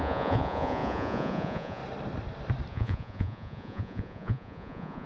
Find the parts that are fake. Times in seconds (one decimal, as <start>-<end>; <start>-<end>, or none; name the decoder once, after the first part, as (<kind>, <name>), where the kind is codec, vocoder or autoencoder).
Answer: 0.0-1.8 (vocoder, Vocos); 2.7-5.1